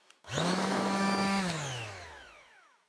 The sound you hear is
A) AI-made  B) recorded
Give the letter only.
A